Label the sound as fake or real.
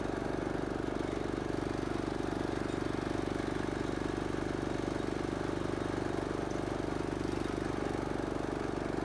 real